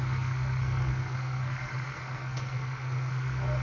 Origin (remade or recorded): remade